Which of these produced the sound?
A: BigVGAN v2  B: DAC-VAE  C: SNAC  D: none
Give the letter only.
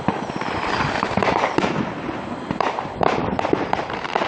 A